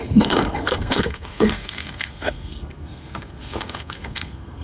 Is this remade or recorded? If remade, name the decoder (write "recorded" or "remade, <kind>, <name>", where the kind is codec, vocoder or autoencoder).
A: remade, codec, SNAC